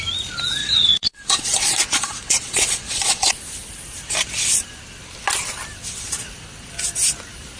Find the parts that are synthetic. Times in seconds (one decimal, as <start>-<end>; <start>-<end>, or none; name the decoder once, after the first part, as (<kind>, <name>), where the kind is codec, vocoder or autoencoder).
0.6-3.3 (vocoder, Vocos)